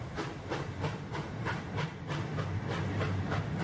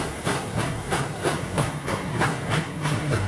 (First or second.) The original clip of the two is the first